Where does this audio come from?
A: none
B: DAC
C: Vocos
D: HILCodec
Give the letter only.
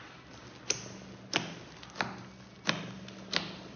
A